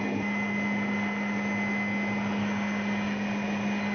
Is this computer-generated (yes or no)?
no